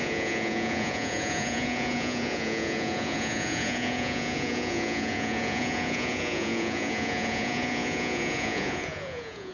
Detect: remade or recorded remade